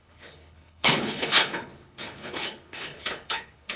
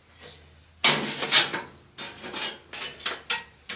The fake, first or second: first